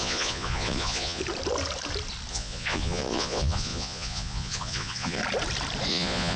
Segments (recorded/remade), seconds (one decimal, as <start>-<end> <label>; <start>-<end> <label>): 0.0-1.2 remade; 1.2-2.3 recorded; 2.3-5.2 remade; 5.2-5.9 recorded; 5.9-6.4 remade